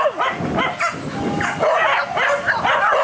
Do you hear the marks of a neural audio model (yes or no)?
no